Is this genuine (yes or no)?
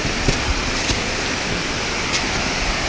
yes